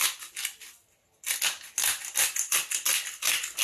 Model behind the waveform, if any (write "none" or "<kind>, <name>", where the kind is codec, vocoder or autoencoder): none